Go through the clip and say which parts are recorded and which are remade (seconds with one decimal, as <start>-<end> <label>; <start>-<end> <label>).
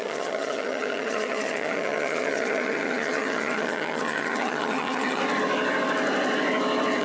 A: 0.0-5.2 remade; 5.2-7.0 recorded